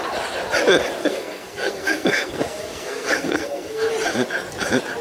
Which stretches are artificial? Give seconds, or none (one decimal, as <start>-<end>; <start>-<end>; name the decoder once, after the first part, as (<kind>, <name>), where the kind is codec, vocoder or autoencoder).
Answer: 1.0-3.9 (codec, SNAC)